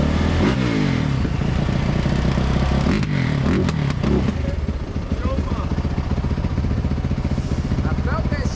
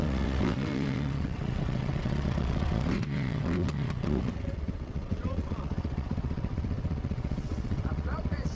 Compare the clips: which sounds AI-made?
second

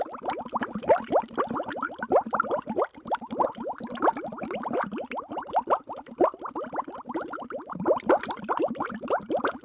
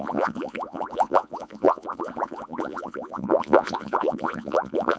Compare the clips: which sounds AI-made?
second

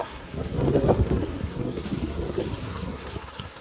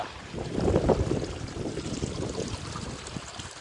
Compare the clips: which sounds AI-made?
first